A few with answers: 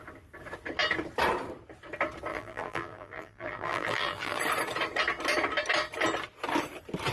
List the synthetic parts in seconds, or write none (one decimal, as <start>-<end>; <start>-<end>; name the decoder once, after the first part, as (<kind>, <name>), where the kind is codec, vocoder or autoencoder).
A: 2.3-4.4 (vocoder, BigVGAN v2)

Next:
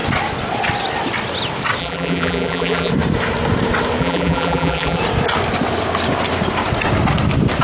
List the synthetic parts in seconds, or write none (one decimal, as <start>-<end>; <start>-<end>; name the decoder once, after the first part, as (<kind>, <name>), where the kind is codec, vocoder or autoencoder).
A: 1.8-2.9 (vocoder, BigVGAN v2); 4.0-5.0

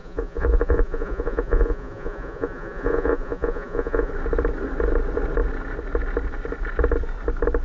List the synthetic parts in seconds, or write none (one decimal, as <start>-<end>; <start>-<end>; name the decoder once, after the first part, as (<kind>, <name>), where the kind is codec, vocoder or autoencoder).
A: 0.0-4.1 (vocoder, Vocos)

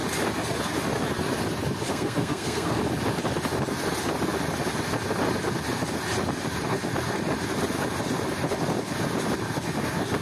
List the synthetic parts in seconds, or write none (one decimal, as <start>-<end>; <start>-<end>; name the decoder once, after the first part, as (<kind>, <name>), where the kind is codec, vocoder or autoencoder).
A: 1.9-2.8 (codec, SNAC)

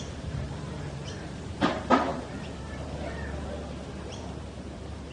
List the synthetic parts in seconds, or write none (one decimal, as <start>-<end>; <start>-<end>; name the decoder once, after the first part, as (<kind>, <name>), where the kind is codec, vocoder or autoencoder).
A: 0.0-5.1 (vocoder, BigVGAN v2)

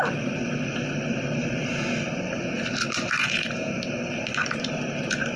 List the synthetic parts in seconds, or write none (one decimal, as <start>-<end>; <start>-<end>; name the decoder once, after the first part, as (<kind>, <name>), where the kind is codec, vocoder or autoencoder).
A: 3.2-3.7 (vocoder, Vocos)

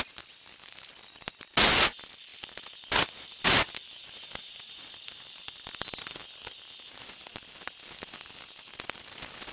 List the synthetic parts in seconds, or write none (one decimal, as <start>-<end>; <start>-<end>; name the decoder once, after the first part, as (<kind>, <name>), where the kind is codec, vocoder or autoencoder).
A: none